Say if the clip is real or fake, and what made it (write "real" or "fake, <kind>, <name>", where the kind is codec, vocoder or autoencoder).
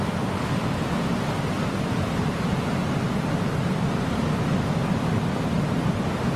real